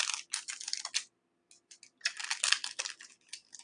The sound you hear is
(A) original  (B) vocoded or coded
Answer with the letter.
A